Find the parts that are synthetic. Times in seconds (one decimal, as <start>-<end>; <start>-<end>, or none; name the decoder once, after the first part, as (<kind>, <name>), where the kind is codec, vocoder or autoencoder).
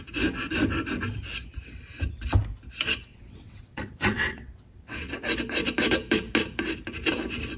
3.1-5.1 (vocoder, WaveNeXt)